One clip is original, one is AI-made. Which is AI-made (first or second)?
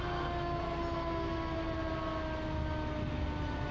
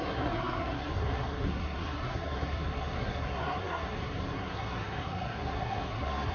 second